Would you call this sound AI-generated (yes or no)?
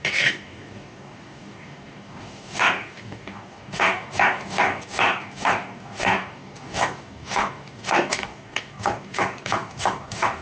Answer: yes